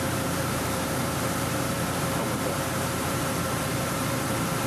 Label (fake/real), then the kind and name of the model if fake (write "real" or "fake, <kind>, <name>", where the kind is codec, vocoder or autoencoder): fake, vocoder, BigVGAN v2